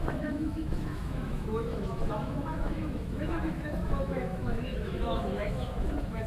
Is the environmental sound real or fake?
fake